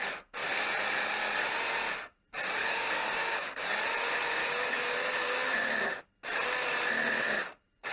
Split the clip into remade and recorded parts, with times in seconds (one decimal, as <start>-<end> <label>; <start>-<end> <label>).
0.0-2.6 recorded; 2.6-3.7 remade; 3.7-4.4 recorded; 4.4-6.0 remade; 6.0-7.9 recorded